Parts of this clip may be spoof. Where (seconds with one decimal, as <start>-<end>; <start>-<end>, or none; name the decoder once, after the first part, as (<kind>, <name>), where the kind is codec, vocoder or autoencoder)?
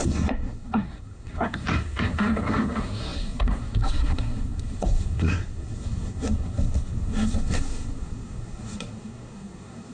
0.0-9.9 (codec, SNAC)